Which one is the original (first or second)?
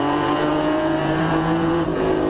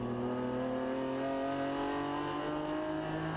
second